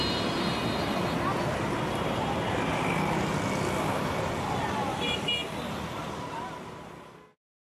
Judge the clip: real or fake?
real